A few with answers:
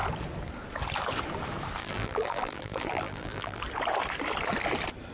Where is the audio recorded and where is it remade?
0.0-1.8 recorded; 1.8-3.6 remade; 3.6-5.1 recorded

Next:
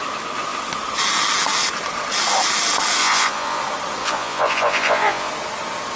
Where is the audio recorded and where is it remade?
0.0-3.0 recorded; 3.0-3.6 remade; 3.6-4.0 recorded; 4.0-5.3 remade; 5.3-6.0 recorded

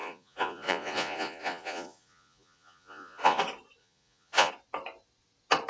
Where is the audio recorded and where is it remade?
0.0-3.4 remade; 3.4-3.8 recorded; 3.8-4.5 remade; 4.5-5.7 recorded

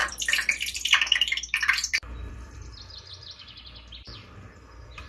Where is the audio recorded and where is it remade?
0.0-5.1 remade

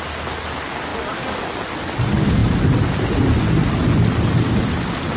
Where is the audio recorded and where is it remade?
0.0-5.2 recorded

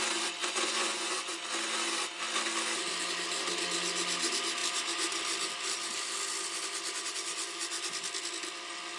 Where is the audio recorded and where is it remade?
0.0-0.4 recorded; 0.4-1.4 remade; 1.4-9.0 recorded